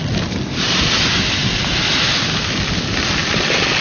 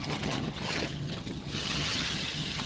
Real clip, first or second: first